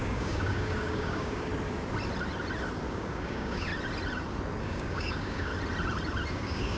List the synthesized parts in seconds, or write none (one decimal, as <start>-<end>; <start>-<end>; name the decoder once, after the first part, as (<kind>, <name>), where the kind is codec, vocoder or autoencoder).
0.0-1.5 (codec, DAC); 2.9-3.7; 4.6-5.5; 6.3-6.8